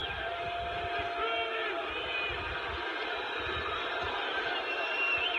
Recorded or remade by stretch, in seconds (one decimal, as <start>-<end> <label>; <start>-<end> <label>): 0.0-3.2 recorded; 3.2-5.4 remade